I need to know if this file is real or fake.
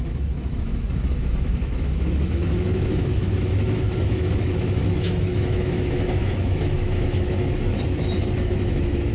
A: fake